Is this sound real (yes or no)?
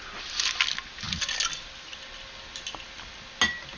yes